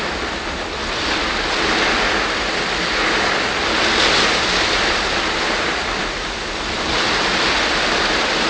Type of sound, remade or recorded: remade